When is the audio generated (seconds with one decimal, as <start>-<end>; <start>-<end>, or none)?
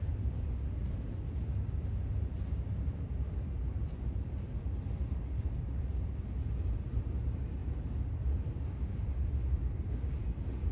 none